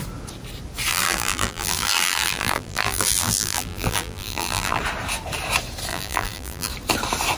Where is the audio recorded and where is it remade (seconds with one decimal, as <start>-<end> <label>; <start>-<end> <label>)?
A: 0.0-0.9 recorded; 0.9-4.8 remade; 4.8-5.9 recorded; 5.9-6.7 remade; 6.7-7.4 recorded